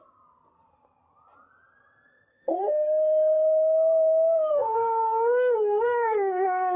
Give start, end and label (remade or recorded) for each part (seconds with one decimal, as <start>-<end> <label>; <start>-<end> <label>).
0.0-2.3 recorded; 2.3-6.8 remade